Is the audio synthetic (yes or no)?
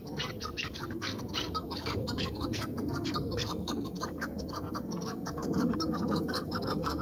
yes